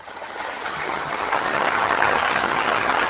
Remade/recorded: remade